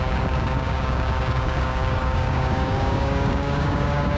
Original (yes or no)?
no